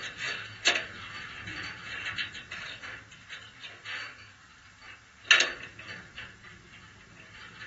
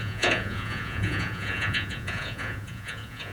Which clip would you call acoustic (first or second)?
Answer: first